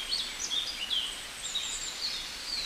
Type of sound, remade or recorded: recorded